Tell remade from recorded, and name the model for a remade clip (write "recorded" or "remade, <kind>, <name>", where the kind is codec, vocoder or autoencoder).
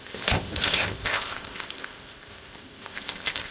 remade, codec, ZipCodec